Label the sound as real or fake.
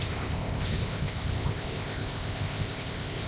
fake